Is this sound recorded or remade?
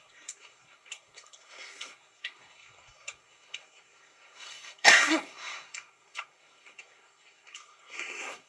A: remade